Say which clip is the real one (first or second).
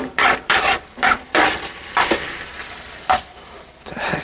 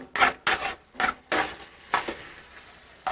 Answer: second